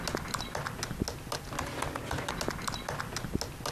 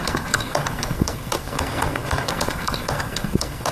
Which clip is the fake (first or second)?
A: second